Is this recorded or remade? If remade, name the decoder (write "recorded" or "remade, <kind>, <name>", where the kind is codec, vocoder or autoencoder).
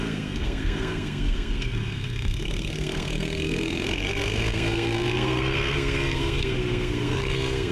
remade, codec, SNAC